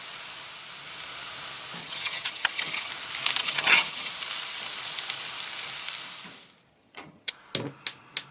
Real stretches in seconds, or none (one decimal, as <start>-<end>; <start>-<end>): 0.0-1.8; 2.9-3.4; 4.1-6.7; 7.3-8.3